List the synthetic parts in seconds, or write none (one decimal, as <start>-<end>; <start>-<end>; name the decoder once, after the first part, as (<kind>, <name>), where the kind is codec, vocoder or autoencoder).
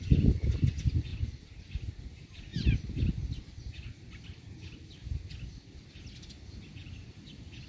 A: none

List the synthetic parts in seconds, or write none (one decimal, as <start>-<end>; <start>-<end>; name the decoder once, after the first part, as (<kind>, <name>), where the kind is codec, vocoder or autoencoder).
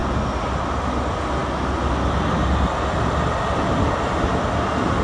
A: none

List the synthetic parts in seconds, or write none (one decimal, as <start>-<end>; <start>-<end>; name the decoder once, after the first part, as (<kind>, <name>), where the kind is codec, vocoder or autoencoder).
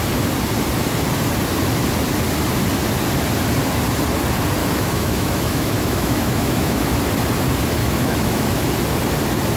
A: 4.6-6.9 (autoencoder, DAC-VAE); 7.8-8.7